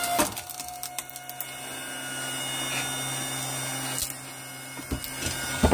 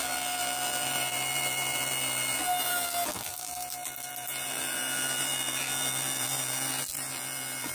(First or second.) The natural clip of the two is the first